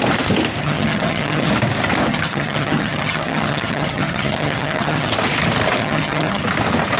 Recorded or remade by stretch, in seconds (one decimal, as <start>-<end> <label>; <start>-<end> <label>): 0.0-0.6 recorded; 0.6-1.5 remade; 1.5-2.1 recorded; 2.1-5.1 remade; 5.1-5.8 recorded; 5.8-6.4 remade; 6.4-7.0 recorded